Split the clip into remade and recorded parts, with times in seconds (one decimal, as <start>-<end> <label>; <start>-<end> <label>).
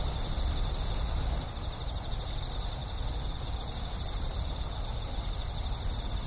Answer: 0.0-6.3 recorded